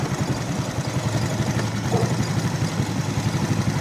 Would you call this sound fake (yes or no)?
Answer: no